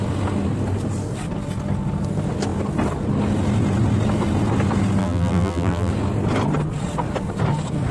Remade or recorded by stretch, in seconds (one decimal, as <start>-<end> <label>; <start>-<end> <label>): 0.0-5.0 recorded; 5.0-5.9 remade; 5.9-7.9 recorded